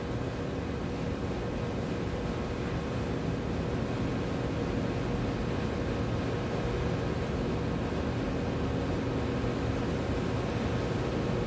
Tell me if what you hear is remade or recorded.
recorded